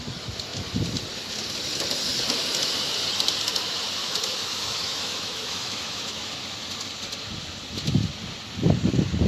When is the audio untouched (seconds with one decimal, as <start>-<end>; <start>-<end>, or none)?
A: 0.0-4.0; 6.3-9.3